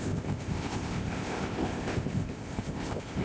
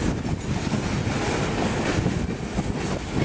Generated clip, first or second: first